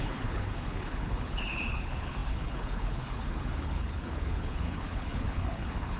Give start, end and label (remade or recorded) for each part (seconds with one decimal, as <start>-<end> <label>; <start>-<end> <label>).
0.0-6.0 remade